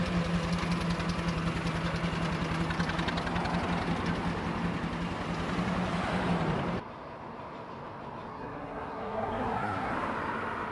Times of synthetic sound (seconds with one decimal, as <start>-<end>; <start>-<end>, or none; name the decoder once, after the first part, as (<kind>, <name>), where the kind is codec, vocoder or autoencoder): 8.3-9.9 (codec, SNAC)